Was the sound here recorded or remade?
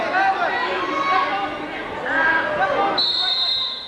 recorded